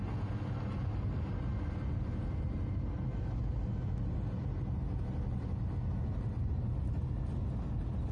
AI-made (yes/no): no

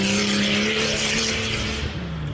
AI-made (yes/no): no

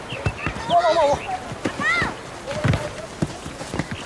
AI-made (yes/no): no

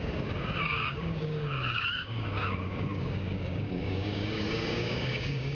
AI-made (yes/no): yes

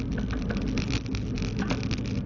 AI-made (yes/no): no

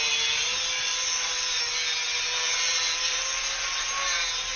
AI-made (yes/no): no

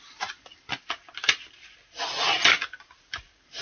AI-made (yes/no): no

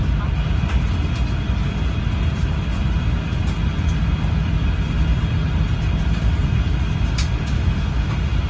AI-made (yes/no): no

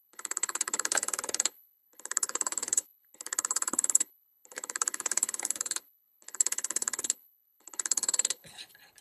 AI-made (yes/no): yes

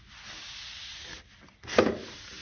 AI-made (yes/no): no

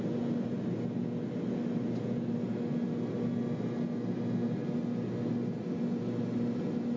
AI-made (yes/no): no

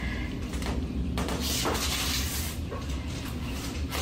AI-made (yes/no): no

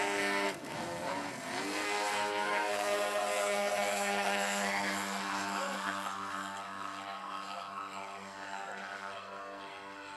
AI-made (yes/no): yes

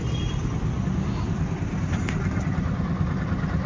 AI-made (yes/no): yes